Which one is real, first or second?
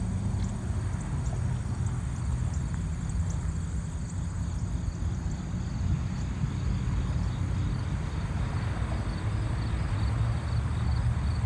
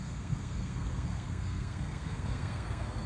first